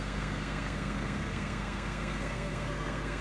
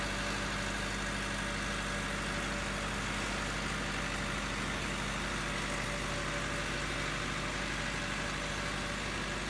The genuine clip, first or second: second